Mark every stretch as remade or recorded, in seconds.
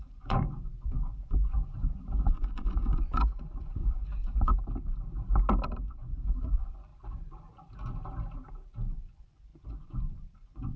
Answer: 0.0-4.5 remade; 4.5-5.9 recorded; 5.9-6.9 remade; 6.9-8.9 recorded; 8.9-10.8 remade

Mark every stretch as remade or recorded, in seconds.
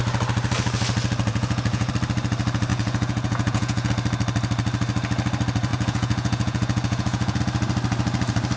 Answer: 0.0-1.3 recorded; 1.3-1.9 remade; 1.9-2.7 recorded; 2.7-3.9 remade; 3.9-5.7 recorded; 5.7-7.4 remade; 7.4-8.6 recorded